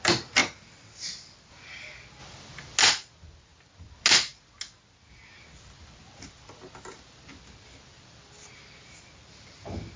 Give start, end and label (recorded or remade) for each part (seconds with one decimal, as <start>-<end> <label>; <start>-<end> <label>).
0.0-10.0 recorded